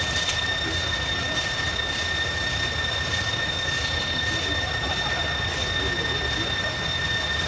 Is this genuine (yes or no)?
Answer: yes